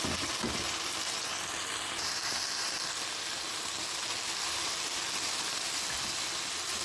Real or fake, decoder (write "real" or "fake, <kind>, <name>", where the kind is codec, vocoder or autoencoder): real